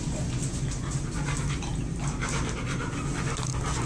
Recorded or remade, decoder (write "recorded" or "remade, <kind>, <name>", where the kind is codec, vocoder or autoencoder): recorded